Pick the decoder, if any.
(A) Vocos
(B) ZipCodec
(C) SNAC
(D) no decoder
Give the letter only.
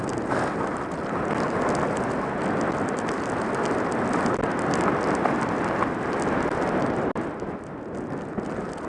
D